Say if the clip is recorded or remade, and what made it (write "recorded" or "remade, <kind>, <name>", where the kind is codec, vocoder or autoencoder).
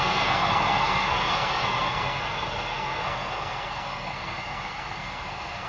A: remade, codec, SNAC